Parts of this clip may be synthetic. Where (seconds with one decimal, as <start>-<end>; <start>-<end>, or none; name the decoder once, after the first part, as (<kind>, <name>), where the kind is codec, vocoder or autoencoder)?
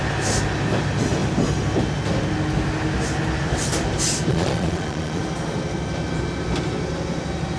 4.3-5.2 (vocoder, Vocos)